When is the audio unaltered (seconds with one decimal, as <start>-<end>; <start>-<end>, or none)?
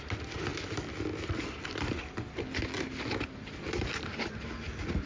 0.0-5.1